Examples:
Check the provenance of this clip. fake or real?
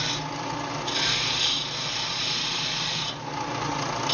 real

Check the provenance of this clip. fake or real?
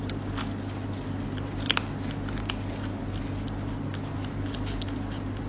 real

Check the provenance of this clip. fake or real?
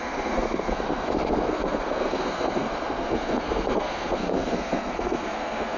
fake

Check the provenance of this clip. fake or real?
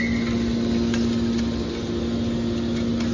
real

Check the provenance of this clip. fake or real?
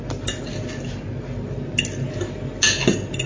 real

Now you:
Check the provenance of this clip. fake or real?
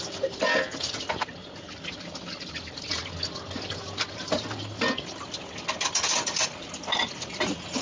real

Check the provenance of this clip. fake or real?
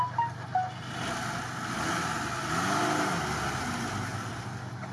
real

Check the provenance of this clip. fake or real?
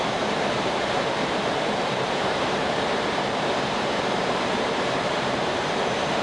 fake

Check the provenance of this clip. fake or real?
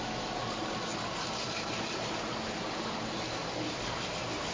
real